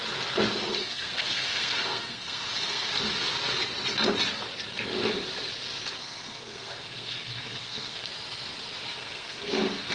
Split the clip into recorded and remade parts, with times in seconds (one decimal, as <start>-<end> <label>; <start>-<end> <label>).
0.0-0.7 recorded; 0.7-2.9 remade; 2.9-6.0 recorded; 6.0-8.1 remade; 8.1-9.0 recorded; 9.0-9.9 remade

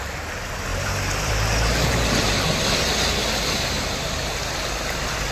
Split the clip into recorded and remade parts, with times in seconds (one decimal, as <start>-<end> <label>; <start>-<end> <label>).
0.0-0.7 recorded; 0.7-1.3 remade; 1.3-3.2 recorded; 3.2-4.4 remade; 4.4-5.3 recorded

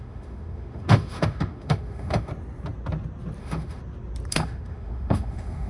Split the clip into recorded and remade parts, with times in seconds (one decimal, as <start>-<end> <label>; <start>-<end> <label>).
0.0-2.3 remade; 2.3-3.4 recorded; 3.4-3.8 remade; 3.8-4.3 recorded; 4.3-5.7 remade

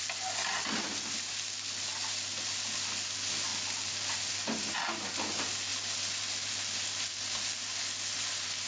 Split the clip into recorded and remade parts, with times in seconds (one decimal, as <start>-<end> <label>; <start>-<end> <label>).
0.0-8.7 recorded